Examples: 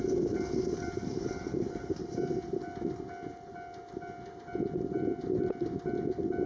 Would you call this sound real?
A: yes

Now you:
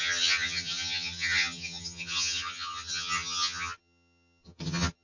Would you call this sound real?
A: no